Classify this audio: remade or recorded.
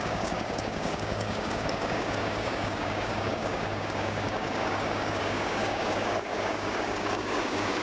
remade